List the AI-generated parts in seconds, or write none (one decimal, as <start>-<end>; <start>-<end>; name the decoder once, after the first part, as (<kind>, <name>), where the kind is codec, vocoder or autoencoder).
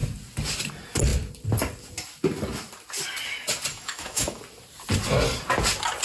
3.7-4.4 (autoencoder, DAC-VAE)